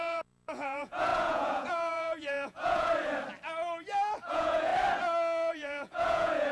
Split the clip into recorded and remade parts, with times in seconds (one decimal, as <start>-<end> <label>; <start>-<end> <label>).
0.0-2.9 remade; 2.9-4.3 recorded; 4.3-4.7 remade; 4.7-5.5 recorded; 5.5-6.5 remade